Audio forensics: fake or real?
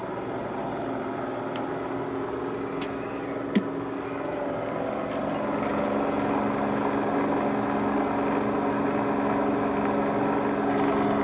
real